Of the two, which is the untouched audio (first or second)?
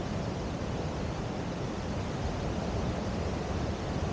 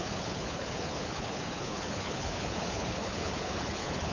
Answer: first